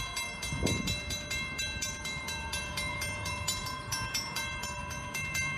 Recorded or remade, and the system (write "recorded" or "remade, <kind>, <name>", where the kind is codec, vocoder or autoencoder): remade, vocoder, BigVGAN v2